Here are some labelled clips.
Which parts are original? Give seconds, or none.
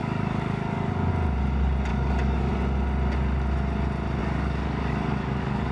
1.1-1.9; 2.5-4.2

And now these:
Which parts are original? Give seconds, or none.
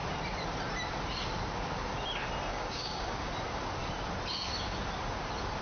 0.0-2.5; 3.3-5.6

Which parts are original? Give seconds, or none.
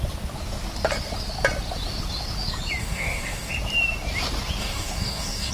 0.0-2.8; 3.5-4.6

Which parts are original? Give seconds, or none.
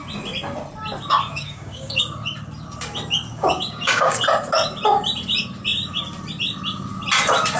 0.0-1.3; 2.0-3.3; 4.2-7.6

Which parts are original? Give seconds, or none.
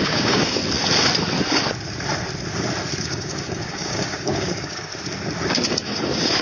0.6-3.0; 4.9-5.5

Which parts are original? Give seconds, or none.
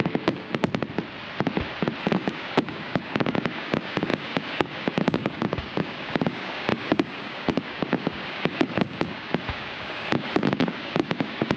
0.6-2.0